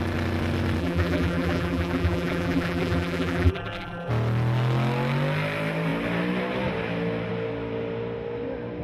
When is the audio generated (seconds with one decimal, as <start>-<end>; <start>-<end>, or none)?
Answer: 0.8-4.1